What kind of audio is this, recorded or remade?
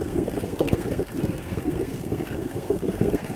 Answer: remade